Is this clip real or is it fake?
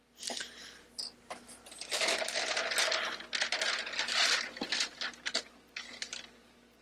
real